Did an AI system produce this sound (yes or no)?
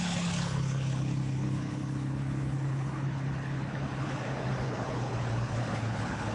yes